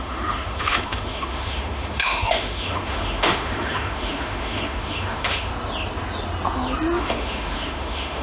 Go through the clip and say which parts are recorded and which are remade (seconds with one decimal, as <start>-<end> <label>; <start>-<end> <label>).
0.0-5.5 remade; 5.5-7.0 recorded; 7.0-8.2 remade